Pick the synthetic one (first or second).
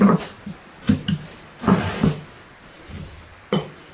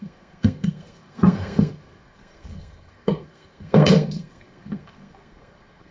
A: second